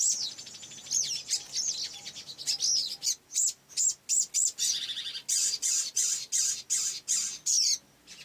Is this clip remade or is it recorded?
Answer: recorded